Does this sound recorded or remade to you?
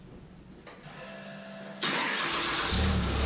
recorded